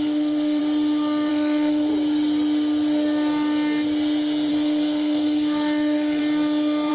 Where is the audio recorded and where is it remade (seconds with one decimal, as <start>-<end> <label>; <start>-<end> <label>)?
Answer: 0.0-0.6 remade; 0.6-1.3 recorded; 1.3-1.9 remade; 1.9-4.5 recorded; 4.5-6.2 remade; 6.2-6.9 recorded